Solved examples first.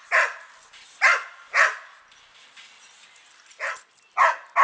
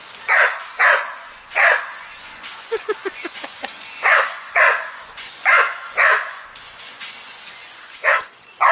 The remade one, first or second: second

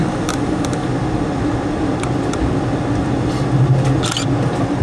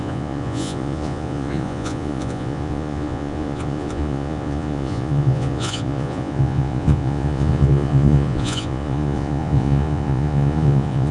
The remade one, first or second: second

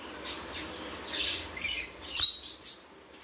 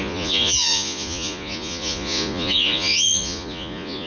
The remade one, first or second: second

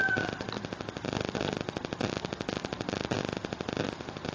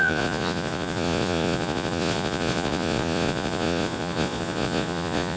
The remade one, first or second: second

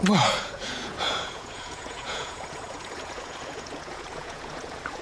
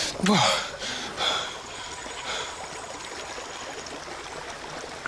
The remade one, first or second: first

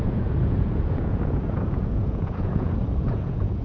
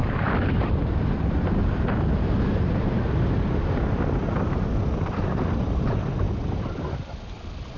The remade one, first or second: first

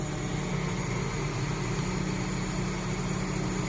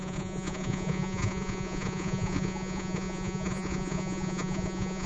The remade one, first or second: second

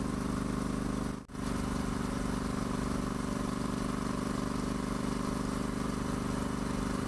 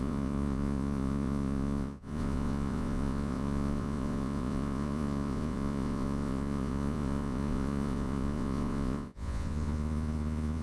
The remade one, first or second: second